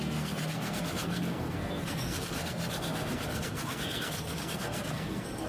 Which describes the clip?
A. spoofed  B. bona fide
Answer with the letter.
A